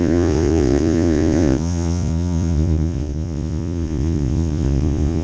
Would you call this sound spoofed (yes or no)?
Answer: yes